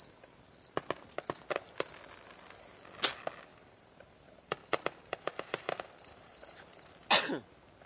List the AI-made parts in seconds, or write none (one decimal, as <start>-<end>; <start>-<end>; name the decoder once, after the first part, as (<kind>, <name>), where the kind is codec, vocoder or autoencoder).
3.5-6.9 (vocoder, BigVGAN v2)